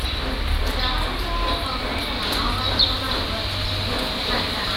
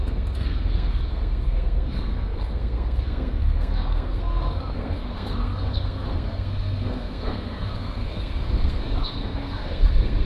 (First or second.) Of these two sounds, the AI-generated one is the second